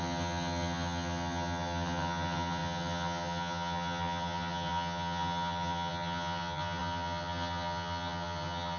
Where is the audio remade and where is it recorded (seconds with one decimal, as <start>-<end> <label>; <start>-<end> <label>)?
0.0-8.8 remade